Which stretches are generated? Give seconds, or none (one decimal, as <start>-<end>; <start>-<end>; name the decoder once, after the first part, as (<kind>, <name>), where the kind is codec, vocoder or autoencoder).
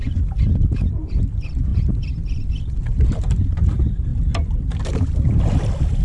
none